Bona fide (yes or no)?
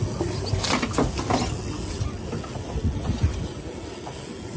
yes